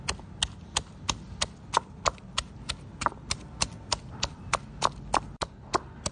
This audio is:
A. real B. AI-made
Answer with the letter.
A